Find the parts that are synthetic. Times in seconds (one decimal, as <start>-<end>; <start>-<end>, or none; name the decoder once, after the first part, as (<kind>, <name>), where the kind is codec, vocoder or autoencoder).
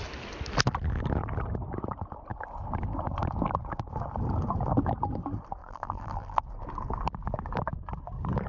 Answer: 5.6-6.4 (vocoder, BigVGAN v2)